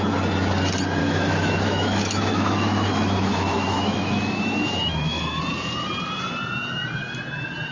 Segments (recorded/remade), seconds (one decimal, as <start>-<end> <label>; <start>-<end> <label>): 0.0-1.0 recorded; 1.0-5.4 remade; 5.4-7.7 recorded